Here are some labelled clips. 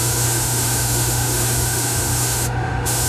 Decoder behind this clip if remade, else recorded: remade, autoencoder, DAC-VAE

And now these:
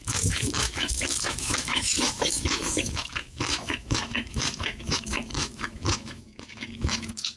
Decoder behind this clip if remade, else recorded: remade, autoencoder, DAC-VAE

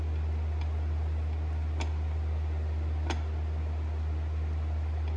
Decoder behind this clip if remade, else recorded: recorded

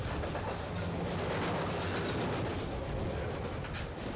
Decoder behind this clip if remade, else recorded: recorded